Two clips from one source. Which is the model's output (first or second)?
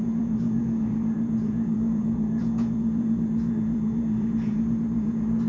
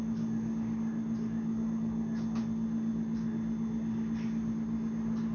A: first